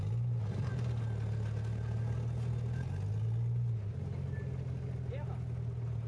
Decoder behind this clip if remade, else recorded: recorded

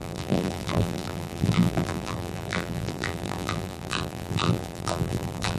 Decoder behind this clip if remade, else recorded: remade, vocoder, BigVGAN v2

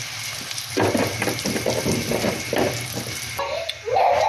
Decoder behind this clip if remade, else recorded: recorded